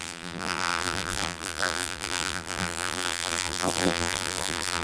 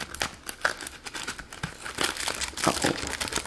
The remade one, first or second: first